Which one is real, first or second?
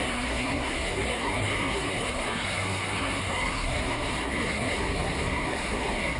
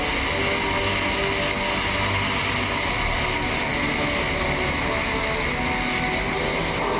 second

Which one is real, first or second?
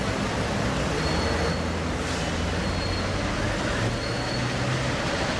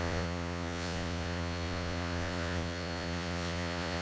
first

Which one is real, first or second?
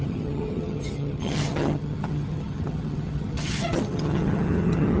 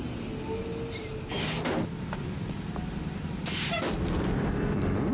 second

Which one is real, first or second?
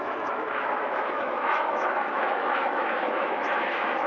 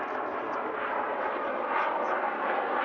second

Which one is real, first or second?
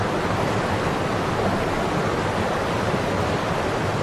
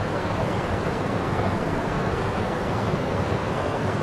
first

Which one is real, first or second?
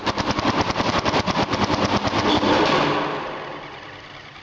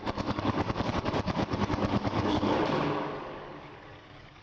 first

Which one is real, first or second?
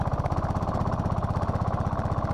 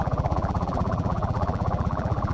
first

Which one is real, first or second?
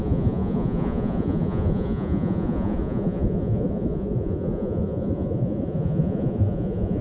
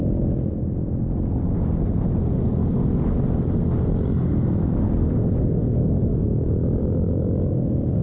second